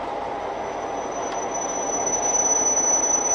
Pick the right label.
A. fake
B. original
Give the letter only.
B